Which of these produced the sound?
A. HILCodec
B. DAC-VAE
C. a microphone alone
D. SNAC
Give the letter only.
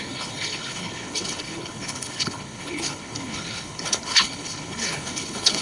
A